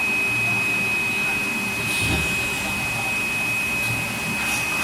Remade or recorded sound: recorded